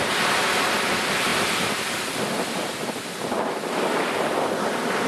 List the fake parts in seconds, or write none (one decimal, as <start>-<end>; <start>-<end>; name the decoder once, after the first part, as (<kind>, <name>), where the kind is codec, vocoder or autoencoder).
none